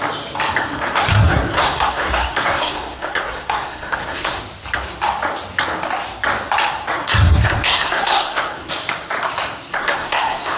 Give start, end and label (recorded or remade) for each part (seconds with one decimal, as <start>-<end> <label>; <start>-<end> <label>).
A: 0.0-0.6 recorded; 0.6-4.4 remade; 4.4-7.0 recorded; 7.0-8.7 remade; 8.7-9.7 recorded; 9.7-10.6 remade